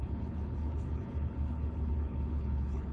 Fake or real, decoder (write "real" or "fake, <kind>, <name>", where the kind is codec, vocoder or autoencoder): fake, codec, HILCodec